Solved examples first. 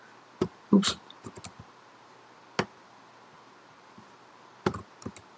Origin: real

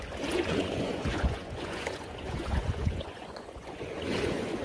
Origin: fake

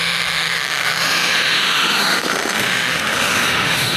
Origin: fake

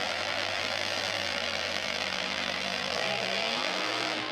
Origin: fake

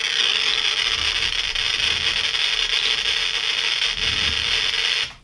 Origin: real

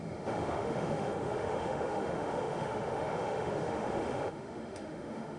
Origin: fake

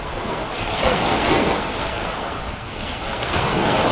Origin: fake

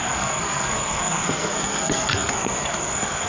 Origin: fake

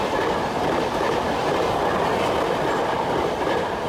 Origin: real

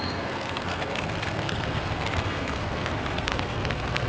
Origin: fake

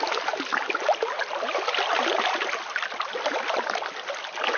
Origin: real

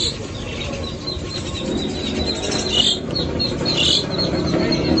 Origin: real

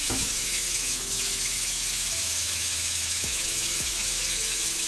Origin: fake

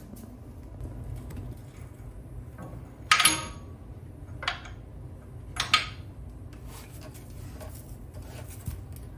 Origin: real